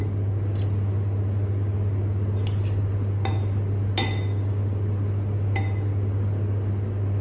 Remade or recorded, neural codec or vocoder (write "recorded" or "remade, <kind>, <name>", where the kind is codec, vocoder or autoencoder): recorded